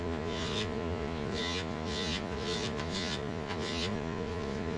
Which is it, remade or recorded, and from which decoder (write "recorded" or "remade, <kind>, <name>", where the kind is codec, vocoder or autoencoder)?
remade, vocoder, Vocos